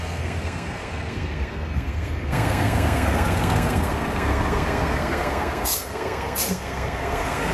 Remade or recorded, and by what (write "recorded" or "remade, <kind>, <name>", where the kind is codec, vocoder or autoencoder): remade, codec, SNAC